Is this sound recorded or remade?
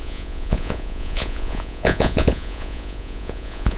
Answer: remade